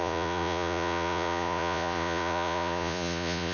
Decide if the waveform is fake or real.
fake